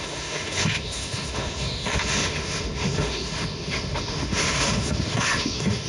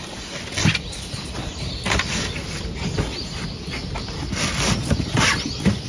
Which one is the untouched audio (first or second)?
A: second